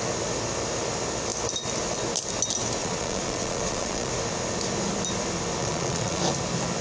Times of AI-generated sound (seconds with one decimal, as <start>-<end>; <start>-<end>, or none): 2.8-4.1; 5.6-6.2

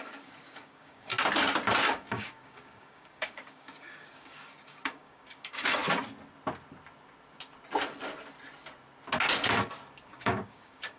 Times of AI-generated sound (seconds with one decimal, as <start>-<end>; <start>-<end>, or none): 0.0-1.1; 1.9-5.8; 10.1-11.0

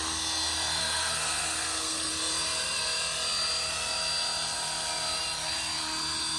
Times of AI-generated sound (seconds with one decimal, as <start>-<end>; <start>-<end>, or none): 0.8-2.1

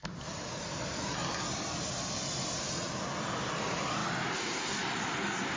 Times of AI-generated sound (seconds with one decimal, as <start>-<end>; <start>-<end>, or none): none

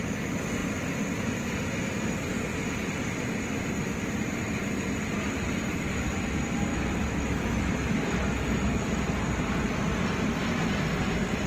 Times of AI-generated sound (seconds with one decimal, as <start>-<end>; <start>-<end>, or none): 6.7-9.0